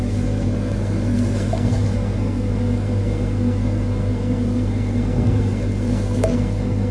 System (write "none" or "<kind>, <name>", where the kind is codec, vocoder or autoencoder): codec, SNAC